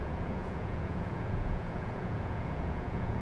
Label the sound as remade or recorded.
remade